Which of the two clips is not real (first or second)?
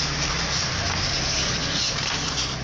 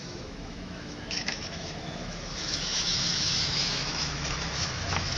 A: second